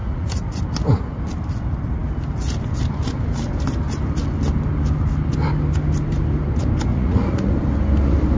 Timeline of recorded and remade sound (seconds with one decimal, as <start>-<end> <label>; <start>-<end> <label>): 0.0-0.6 remade; 0.6-6.9 recorded; 6.9-7.5 remade; 7.5-8.4 recorded